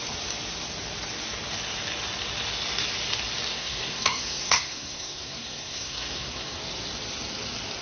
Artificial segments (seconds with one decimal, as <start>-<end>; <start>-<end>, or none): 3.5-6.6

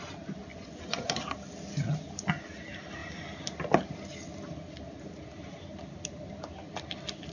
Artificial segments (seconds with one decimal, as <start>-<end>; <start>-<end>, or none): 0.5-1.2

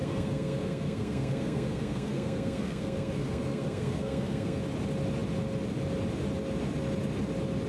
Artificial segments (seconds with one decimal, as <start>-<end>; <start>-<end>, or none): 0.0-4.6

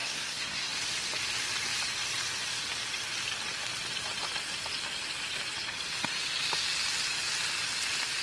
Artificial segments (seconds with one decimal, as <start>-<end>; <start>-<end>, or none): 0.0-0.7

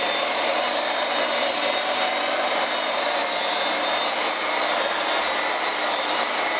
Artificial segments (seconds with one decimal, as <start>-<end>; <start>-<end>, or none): 0.0-3.2; 5.6-6.6

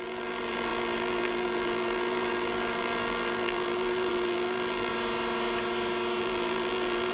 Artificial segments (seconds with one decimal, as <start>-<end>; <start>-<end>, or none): 0.0-4.9; 6.2-7.1

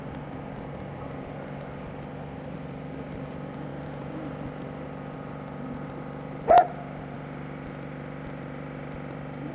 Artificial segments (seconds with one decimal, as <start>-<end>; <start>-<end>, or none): none